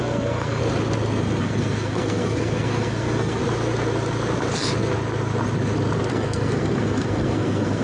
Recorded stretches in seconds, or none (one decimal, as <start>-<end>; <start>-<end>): 0.6-1.4; 3.4-6.1